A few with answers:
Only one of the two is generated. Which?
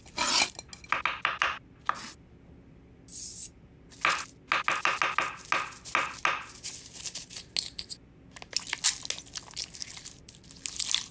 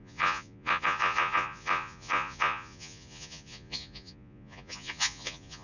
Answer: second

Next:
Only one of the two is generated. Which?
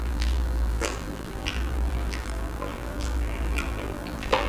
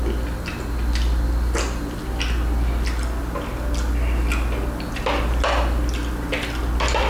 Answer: first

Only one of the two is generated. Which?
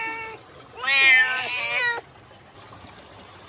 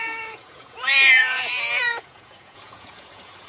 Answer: second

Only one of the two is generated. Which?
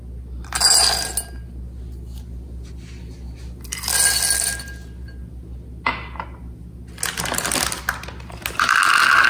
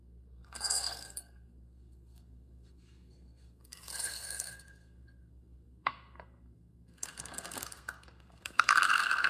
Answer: second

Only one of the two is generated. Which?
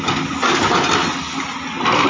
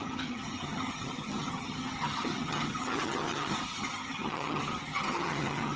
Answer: second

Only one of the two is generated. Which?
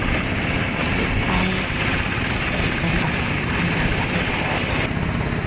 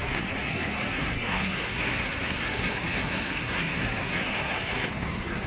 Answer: second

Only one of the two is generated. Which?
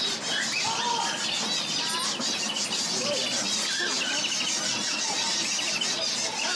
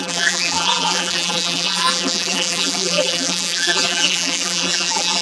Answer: second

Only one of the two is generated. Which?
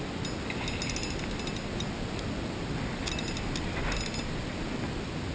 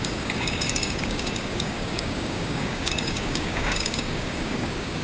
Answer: second